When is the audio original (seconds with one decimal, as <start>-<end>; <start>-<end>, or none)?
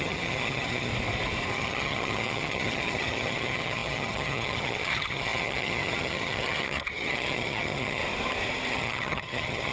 0.9-1.5; 8.0-8.7